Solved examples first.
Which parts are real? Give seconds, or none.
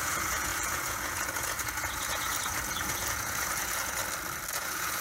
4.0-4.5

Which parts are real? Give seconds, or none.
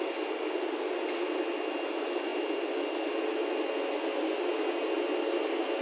0.0-5.8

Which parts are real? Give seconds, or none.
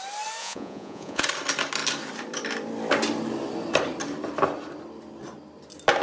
0.0-0.4; 1.2-6.0